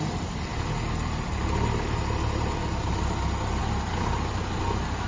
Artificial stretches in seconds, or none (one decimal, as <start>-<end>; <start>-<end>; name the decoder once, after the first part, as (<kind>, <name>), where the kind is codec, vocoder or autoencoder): none